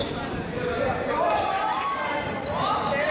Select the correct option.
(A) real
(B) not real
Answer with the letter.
A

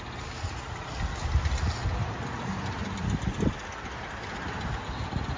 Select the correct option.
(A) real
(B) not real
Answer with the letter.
A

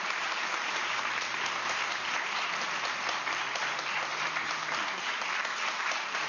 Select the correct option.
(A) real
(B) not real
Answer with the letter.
B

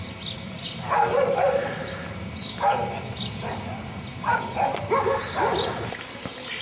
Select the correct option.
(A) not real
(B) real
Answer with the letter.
A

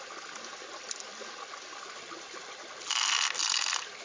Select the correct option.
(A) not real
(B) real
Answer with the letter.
B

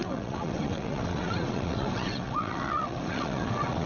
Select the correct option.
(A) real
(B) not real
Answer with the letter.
B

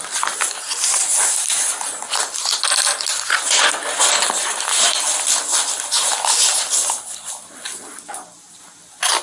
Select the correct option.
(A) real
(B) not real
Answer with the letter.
A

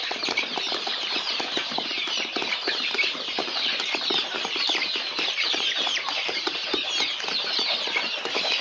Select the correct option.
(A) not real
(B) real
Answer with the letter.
A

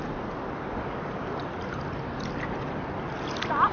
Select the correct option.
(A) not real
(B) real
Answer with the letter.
B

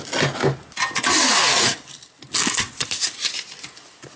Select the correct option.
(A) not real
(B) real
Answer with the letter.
B